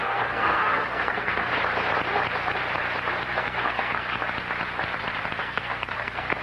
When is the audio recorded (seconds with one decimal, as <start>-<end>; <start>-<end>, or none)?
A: 1.5-3.3; 4.2-5.4